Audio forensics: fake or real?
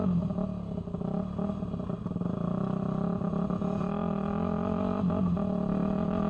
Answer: real